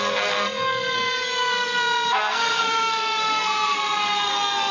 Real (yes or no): no